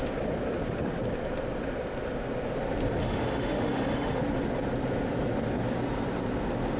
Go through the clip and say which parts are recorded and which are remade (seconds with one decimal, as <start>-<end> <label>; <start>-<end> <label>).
0.0-3.0 recorded; 3.0-4.2 remade; 4.2-6.8 recorded